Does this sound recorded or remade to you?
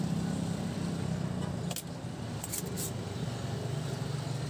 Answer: recorded